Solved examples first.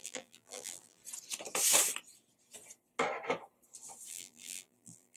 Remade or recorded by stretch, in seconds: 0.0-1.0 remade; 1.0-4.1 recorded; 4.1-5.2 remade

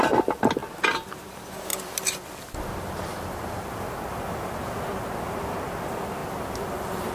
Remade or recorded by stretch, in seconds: 0.0-1.7 recorded; 1.7-4.4 remade; 4.4-6.2 recorded; 6.2-7.1 remade